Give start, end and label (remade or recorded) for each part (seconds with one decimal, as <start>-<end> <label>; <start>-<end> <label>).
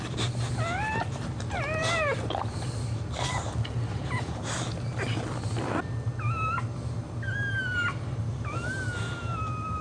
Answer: 0.0-9.8 recorded